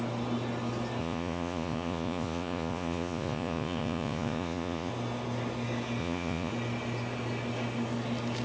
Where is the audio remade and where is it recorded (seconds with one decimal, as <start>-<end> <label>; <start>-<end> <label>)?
0.0-1.0 recorded; 1.0-4.9 remade; 4.9-6.0 recorded; 6.0-6.5 remade; 6.5-8.4 recorded